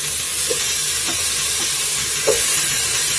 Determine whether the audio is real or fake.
real